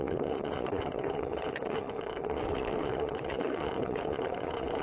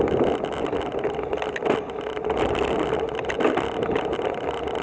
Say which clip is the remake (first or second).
first